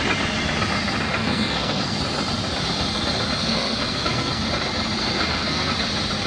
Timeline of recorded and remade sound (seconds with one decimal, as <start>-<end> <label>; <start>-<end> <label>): 0.0-1.2 recorded; 1.2-2.0 remade; 2.0-3.4 recorded; 3.4-4.4 remade; 4.4-5.0 recorded; 5.0-5.7 remade; 5.7-6.3 recorded